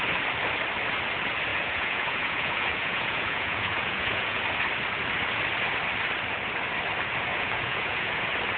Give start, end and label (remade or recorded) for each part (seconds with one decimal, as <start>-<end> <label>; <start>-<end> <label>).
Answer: 0.0-1.5 recorded; 1.5-4.4 remade; 4.4-7.3 recorded; 7.3-8.2 remade; 8.2-8.6 recorded